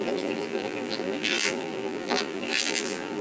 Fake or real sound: fake